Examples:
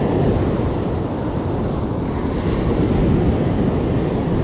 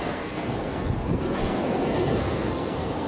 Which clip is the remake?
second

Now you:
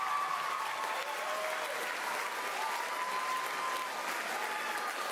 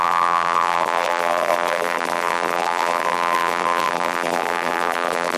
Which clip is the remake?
second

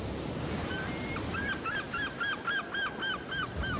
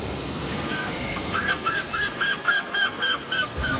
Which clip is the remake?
second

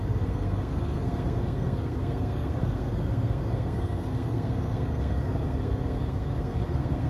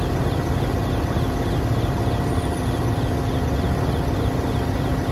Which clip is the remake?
first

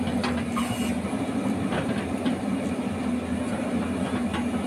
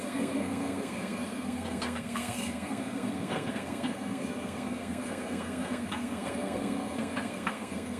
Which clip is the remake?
second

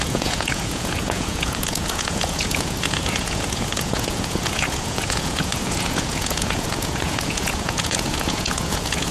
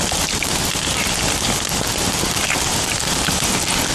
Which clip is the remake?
first